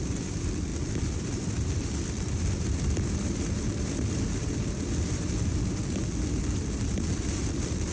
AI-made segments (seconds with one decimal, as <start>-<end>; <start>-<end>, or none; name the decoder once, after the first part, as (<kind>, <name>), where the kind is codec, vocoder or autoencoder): 0.0-6.0 (vocoder, BigVGAN v2); 7.3-7.9